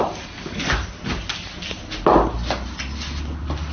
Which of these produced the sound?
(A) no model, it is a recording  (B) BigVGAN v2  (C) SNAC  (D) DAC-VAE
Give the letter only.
A